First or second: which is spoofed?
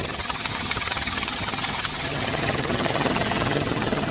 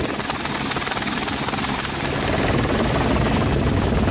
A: first